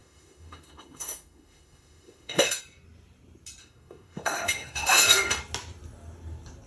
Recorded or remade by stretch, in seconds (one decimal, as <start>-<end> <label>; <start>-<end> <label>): 0.0-2.6 remade; 2.6-3.6 recorded; 3.6-5.4 remade; 5.4-6.7 recorded

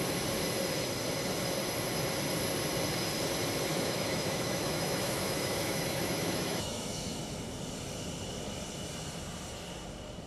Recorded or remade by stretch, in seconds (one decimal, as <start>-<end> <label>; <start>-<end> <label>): 0.0-3.7 recorded; 3.7-7.2 remade; 7.2-10.3 recorded

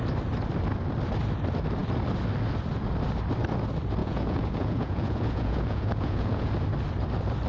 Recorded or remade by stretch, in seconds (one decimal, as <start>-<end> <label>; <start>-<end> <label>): 0.0-4.0 recorded; 4.0-6.5 remade; 6.5-7.5 recorded